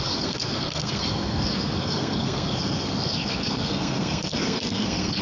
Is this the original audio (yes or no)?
no